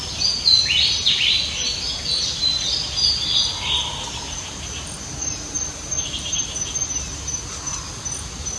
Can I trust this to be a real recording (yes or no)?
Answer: yes